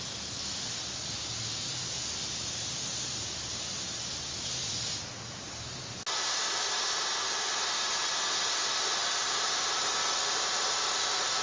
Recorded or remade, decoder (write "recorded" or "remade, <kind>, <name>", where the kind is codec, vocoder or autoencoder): recorded